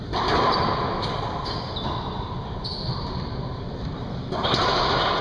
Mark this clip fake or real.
real